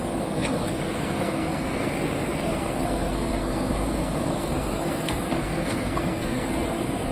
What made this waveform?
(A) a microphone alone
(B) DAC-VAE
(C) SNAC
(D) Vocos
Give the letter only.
C